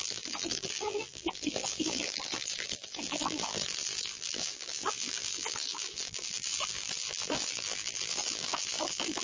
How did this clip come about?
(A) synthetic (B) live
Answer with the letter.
A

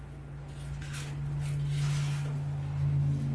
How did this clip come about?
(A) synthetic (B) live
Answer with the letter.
B